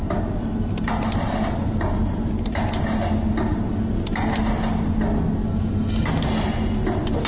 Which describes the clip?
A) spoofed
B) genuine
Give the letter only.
B